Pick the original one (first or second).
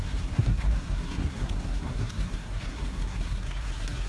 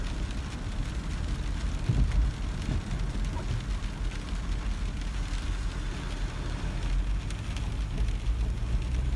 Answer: second